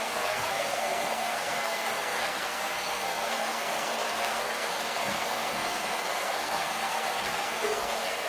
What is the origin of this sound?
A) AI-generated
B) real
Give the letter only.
A